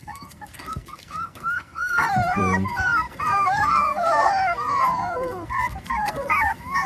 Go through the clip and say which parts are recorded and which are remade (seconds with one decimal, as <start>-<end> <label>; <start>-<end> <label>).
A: 0.0-6.9 remade